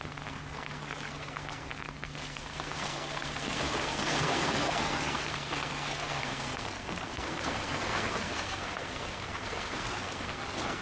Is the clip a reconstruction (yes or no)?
yes